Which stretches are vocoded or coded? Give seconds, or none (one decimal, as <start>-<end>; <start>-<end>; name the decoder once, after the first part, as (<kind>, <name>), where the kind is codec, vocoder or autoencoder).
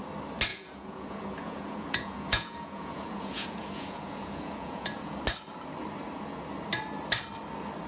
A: 0.5-5.2 (vocoder, Vocos)